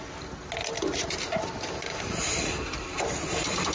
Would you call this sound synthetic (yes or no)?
no